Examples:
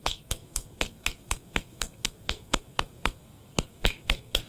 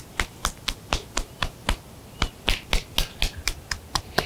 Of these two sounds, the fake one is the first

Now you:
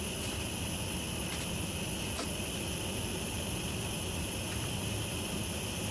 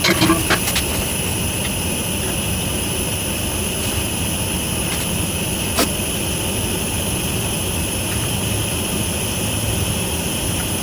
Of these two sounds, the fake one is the first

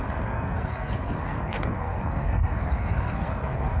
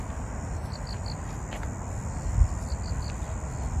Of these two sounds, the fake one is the first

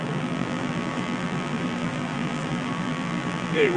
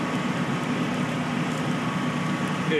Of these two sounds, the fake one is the first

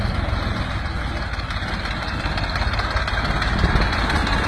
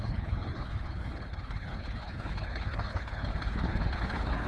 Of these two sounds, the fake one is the second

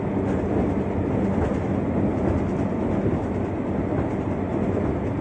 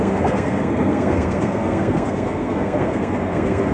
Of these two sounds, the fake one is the second